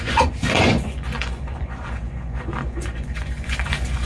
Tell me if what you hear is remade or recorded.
remade